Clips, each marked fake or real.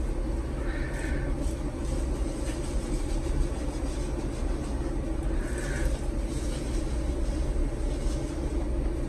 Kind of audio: real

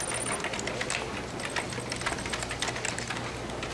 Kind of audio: real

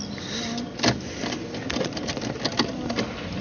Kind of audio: real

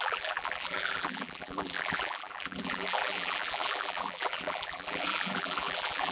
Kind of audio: fake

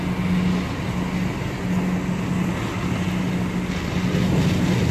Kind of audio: real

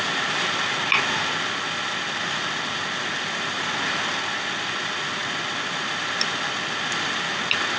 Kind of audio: real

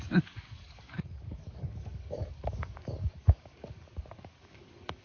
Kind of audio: fake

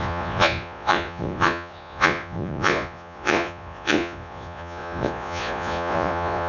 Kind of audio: fake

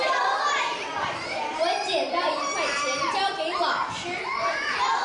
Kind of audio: fake